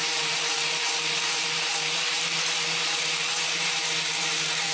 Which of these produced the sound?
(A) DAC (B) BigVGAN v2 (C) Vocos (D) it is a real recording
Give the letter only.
B